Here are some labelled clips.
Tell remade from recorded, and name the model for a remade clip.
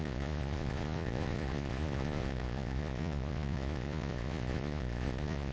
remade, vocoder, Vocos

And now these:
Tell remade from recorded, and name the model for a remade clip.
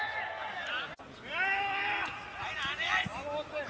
recorded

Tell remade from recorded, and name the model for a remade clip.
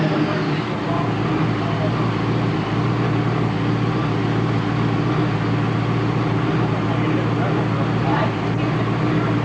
recorded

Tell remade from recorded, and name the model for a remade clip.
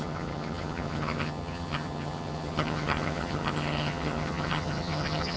remade, vocoder, HiFi-GAN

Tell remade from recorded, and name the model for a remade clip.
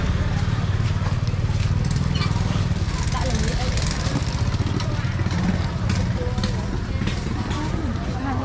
recorded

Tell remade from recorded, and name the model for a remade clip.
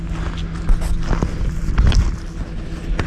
recorded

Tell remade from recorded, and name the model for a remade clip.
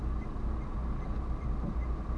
recorded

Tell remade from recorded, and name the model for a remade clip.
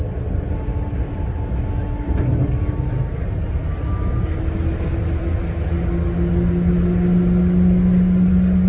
recorded